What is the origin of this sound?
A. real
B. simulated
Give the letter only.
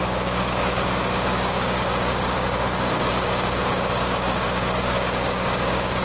B